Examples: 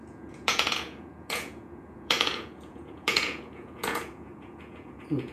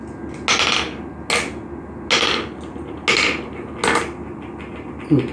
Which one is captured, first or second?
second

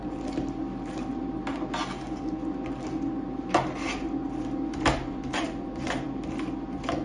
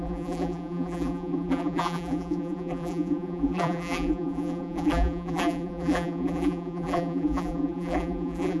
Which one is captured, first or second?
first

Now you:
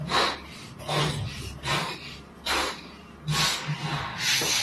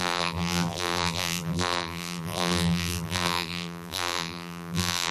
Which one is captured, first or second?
first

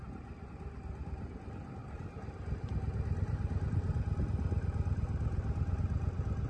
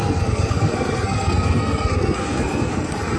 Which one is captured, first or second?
first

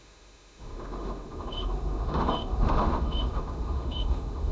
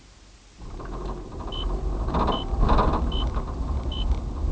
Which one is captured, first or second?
second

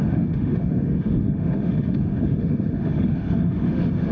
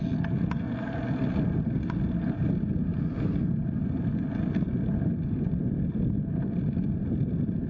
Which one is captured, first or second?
second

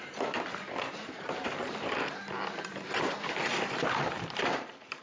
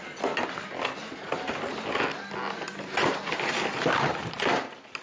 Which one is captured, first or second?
second